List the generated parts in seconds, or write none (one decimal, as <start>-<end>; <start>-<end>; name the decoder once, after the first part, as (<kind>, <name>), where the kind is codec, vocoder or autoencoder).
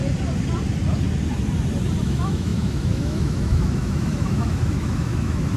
2.0-5.6 (autoencoder, DAC-VAE)